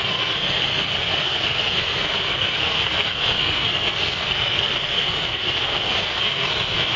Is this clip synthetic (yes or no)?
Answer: yes